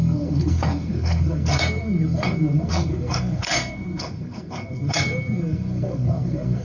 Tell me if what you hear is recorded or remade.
remade